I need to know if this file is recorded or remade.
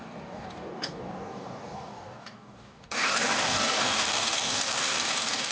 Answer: remade